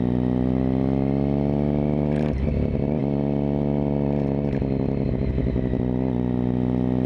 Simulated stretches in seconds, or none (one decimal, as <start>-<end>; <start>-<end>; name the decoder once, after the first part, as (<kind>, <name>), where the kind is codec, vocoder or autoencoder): none